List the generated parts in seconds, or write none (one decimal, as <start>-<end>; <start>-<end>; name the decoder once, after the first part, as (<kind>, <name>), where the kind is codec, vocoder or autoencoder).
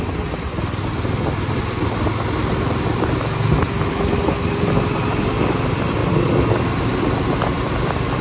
none